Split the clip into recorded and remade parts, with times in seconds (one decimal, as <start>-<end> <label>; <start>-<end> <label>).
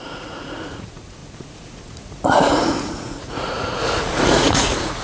0.0-5.0 remade